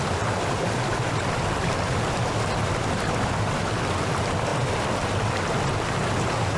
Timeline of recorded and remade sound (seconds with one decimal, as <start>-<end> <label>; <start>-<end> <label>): 0.0-6.6 recorded